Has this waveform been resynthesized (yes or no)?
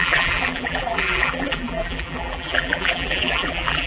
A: yes